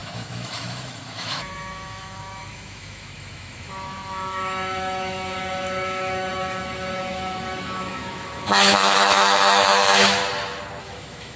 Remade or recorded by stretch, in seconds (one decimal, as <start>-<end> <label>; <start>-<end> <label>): 0.0-10.2 remade; 10.2-10.8 recorded; 10.8-11.4 remade